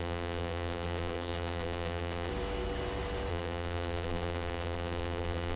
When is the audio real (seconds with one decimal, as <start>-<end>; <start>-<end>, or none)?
2.3-3.3